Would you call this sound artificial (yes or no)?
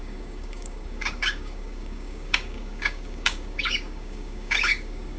yes